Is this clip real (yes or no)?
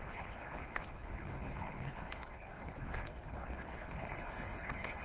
no